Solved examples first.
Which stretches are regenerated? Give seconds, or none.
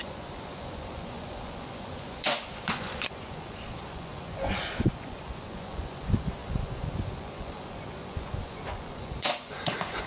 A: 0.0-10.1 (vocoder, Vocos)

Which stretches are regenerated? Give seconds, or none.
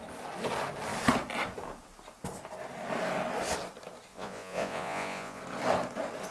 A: 4.1-5.4 (vocoder, Vocos)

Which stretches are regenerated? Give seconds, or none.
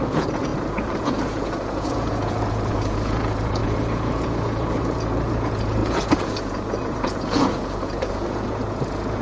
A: 0.0-9.2 (vocoder, Vocos)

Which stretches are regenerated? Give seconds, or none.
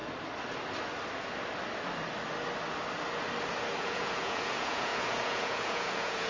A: 3.8-6.3 (vocoder, Vocos)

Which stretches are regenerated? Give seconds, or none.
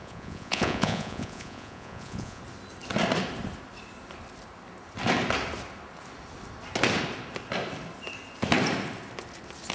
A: 0.0-2.4 (vocoder, Vocos)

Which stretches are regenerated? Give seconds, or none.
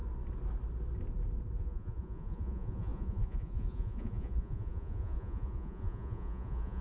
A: 1.6-6.8 (vocoder, Vocos)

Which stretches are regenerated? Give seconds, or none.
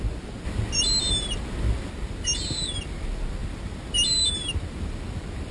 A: none